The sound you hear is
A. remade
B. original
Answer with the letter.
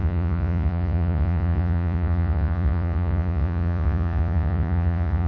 A